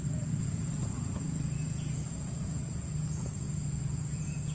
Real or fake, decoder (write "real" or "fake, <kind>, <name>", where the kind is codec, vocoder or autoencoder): fake, vocoder, Vocos